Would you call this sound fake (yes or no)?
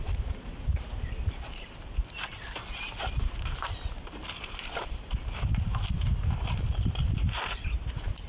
yes